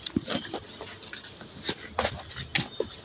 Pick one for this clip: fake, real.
real